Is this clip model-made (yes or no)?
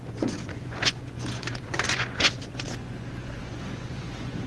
yes